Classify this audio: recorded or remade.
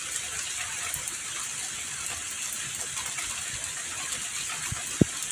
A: recorded